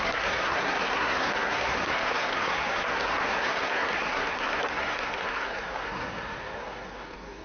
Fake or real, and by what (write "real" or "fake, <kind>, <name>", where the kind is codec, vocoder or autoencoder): fake, codec, SNAC